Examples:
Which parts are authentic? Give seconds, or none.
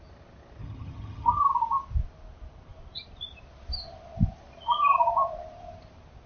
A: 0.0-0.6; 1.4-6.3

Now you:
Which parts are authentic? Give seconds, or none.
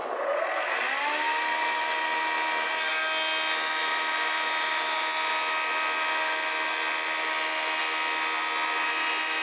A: 0.0-9.4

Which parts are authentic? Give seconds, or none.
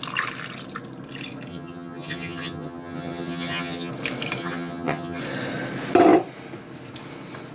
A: 0.0-1.5; 3.9-4.4; 5.2-7.5